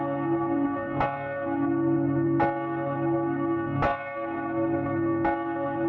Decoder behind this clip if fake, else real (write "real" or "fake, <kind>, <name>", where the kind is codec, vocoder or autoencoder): real